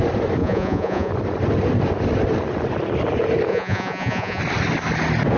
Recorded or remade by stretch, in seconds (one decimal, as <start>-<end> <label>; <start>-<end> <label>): 0.0-0.4 recorded; 0.4-1.1 remade; 1.1-3.5 recorded; 3.5-4.4 remade; 4.4-5.4 recorded